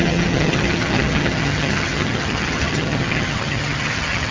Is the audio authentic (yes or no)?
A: no